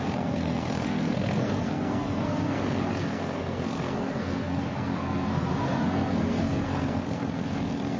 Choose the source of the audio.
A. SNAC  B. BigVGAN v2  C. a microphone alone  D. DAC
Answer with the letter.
A